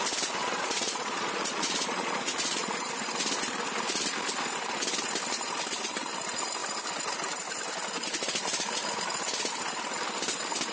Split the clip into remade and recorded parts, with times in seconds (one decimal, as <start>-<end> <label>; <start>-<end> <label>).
0.0-0.4 recorded; 0.4-2.9 remade; 2.9-10.7 recorded